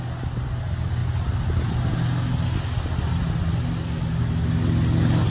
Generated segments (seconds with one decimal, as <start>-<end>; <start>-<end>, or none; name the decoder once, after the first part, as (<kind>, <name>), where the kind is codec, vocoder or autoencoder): none

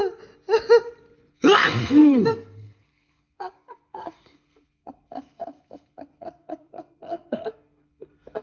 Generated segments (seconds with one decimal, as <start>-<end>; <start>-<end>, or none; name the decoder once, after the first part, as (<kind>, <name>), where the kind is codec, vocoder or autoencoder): 1.3-8.4 (codec, SNAC)

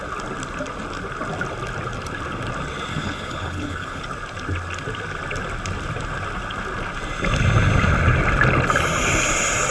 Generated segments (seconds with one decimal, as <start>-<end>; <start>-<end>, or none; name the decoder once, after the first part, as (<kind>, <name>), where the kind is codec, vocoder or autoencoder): 2.9-4.0 (codec, HILCodec)